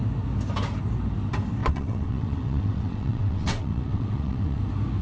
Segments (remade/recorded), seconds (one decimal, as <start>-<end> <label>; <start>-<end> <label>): 0.0-1.6 recorded; 1.6-4.6 remade; 4.6-5.0 recorded